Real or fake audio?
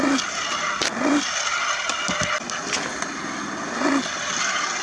real